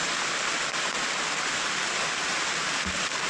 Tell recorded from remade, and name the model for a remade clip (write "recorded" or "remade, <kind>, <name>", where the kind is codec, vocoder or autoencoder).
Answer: recorded